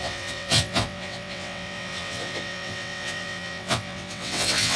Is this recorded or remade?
remade